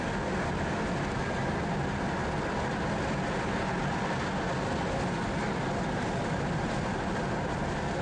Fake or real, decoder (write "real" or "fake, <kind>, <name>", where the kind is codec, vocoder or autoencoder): real